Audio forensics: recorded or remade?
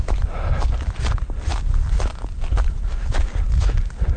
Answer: recorded